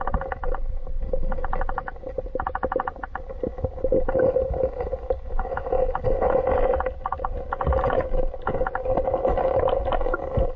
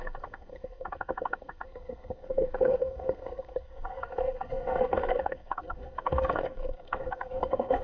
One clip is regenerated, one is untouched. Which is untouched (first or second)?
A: first